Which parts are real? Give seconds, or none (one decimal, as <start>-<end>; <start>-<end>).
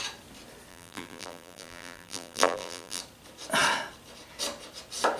0.0-0.7; 3.0-5.2